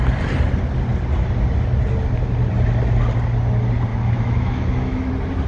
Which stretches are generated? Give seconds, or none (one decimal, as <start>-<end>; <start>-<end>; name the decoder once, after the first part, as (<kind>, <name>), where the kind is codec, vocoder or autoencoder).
3.9-5.1 (autoencoder, DAC-VAE)

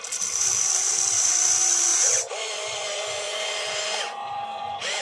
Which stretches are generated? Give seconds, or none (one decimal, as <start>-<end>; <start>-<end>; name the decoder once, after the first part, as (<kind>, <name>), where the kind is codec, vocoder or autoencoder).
1.9-5.0 (vocoder, Vocos)

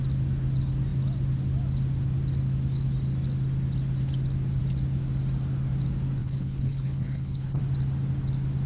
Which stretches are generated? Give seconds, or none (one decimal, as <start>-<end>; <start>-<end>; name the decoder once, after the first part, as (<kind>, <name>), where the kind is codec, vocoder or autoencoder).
6.2-7.6 (codec, HILCodec)